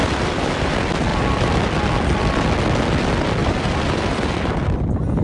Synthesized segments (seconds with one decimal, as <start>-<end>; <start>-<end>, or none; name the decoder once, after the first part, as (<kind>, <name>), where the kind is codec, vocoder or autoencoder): 1.1-1.7 (vocoder, BigVGAN v2); 3.4-4.7